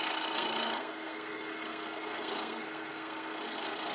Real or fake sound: fake